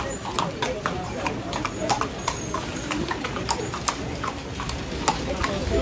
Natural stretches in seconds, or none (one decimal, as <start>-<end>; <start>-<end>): 0.0-1.1; 4.4-5.8